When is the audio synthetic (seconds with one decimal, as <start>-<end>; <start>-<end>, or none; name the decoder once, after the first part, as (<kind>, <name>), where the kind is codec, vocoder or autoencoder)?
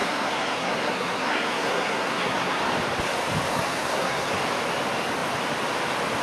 0.0-2.6 (codec, SNAC); 3.5-4.3